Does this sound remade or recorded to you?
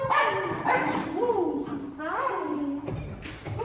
remade